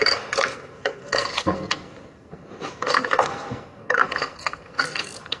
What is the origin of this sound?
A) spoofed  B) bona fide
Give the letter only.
A